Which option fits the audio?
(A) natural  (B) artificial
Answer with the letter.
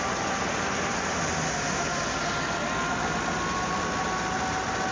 A